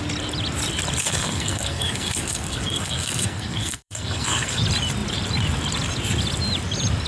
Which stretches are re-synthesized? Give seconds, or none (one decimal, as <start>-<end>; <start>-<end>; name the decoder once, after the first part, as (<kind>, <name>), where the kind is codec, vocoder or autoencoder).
1.0-4.6 (codec, SNAC)